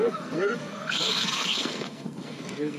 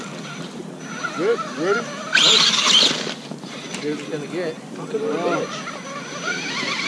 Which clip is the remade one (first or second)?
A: first